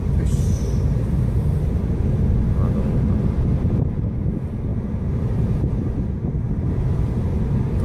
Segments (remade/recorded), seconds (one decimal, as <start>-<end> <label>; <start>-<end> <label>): 0.0-4.7 recorded; 4.7-6.8 remade; 6.8-7.8 recorded